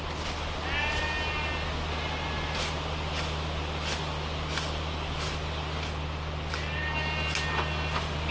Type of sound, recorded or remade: recorded